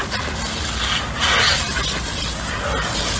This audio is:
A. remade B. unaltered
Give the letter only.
B